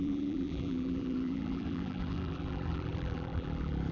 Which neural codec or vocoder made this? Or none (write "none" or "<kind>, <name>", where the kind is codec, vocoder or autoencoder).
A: vocoder, BigVGAN v2